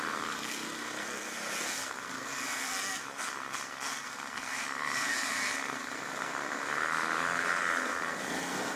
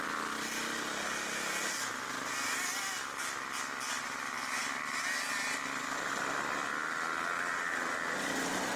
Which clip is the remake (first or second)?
first